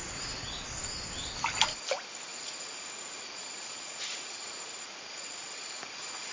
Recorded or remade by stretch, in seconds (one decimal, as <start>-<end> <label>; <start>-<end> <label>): 0.0-0.6 remade; 0.6-2.3 recorded; 2.3-6.3 remade